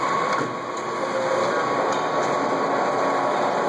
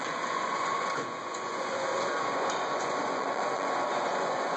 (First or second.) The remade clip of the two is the second